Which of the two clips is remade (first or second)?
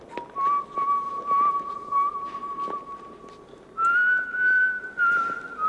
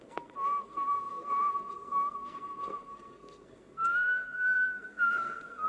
second